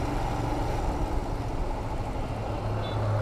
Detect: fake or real real